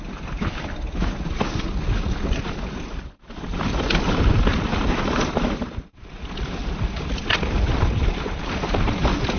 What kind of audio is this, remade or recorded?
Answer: recorded